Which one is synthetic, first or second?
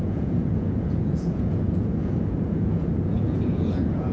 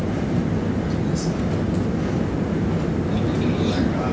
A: first